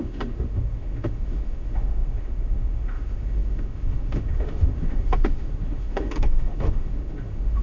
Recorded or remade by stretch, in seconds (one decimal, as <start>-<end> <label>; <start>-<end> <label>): 0.0-7.6 remade